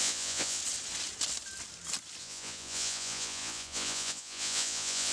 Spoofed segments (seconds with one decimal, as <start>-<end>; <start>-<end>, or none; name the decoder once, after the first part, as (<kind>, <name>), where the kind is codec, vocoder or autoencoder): 0.0-0.6 (vocoder, Vocos); 2.2-5.1